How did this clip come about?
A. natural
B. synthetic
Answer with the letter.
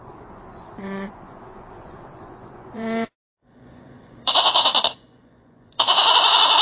B